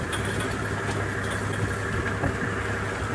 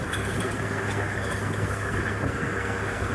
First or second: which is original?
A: first